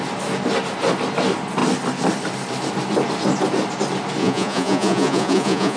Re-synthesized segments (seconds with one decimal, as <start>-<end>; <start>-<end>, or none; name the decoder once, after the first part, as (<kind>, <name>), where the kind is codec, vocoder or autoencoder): 4.2-5.8 (vocoder, Vocos)